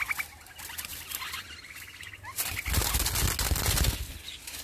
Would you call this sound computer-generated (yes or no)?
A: no